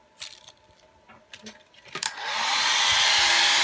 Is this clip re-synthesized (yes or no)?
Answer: yes